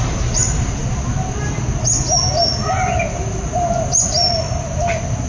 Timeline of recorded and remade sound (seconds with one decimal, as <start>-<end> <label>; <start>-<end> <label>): 0.0-5.3 recorded